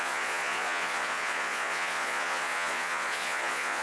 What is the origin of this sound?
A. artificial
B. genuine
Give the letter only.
A